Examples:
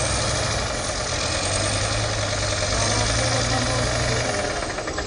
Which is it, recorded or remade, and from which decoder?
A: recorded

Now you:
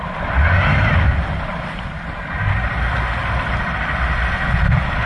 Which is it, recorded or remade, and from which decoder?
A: recorded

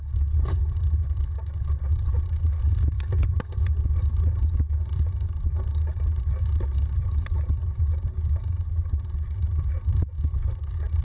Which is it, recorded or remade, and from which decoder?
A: recorded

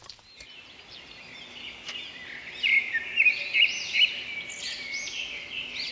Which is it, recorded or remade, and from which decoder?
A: recorded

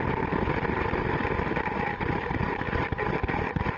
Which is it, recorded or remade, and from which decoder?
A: recorded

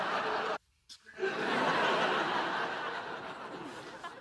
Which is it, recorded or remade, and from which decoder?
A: recorded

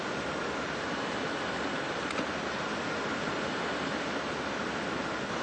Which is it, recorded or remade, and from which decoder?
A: recorded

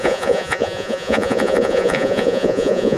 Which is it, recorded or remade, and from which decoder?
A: remade, vocoder, Vocos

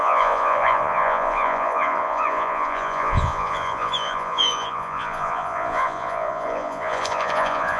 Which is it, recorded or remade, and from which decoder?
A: remade, vocoder, Vocos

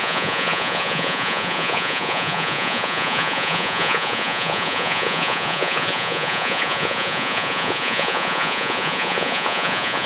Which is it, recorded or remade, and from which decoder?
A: remade, vocoder, Vocos